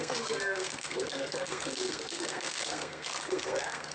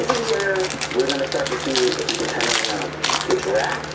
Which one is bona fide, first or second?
second